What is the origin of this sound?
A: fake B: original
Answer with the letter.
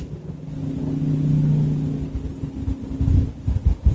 B